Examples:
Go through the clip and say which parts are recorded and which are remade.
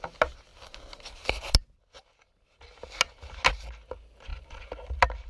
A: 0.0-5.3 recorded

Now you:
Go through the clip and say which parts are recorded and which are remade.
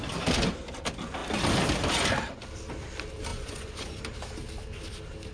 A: 0.0-3.3 recorded; 3.3-4.0 remade; 4.0-5.3 recorded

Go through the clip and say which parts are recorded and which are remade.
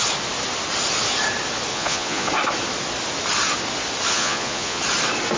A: 0.0-1.7 recorded; 1.7-2.3 remade; 2.3-4.1 recorded; 4.1-4.8 remade; 4.8-5.4 recorded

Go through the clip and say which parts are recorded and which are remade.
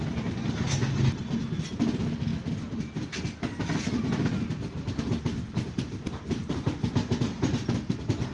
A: 0.0-8.3 recorded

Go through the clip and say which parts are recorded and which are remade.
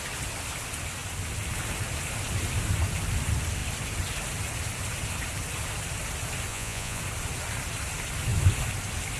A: 0.0-6.5 recorded; 6.5-7.0 remade; 7.0-9.2 recorded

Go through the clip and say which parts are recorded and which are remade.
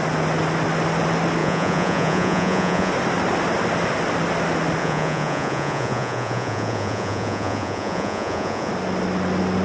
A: 0.0-1.4 recorded; 1.4-2.9 remade; 2.9-4.8 recorded; 4.8-8.7 remade; 8.7-9.6 recorded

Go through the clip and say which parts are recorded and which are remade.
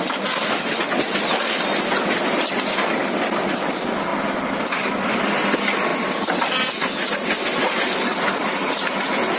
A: 0.0-9.4 recorded